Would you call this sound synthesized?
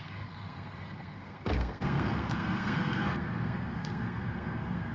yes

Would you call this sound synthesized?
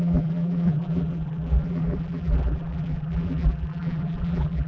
yes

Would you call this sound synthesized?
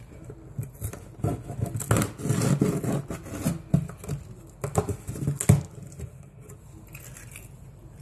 no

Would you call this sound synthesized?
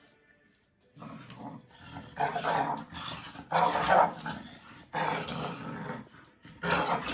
no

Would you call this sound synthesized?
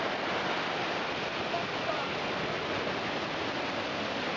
no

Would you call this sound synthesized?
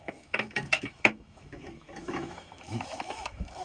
yes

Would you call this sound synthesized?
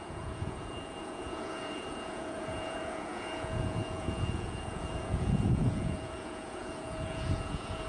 yes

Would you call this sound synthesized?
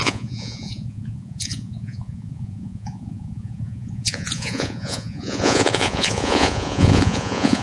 yes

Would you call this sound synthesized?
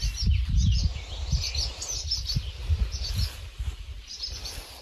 no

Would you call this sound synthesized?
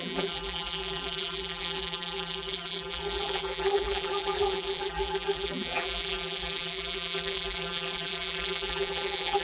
yes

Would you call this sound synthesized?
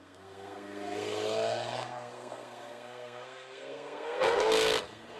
yes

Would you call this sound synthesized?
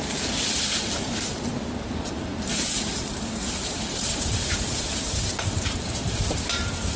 yes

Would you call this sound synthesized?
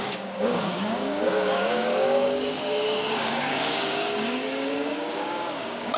yes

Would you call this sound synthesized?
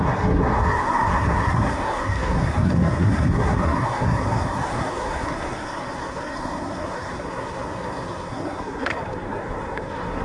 yes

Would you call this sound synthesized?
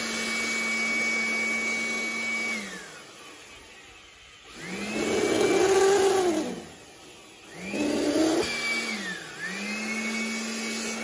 no